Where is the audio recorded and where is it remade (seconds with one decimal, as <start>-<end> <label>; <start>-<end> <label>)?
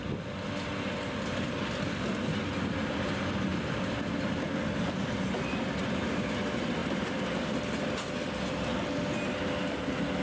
0.0-10.2 recorded